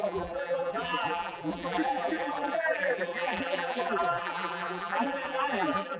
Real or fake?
fake